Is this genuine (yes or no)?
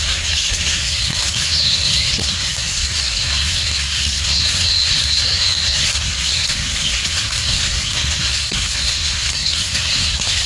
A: no